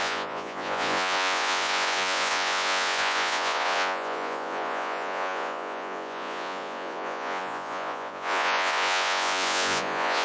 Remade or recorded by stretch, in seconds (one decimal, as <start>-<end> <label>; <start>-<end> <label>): 0.0-10.2 remade